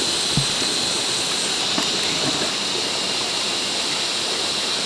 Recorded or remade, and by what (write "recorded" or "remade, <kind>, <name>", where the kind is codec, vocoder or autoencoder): recorded